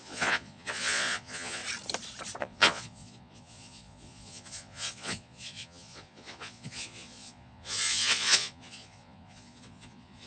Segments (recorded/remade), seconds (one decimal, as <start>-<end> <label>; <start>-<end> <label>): 0.0-1.6 remade; 1.6-2.4 recorded; 2.4-10.3 remade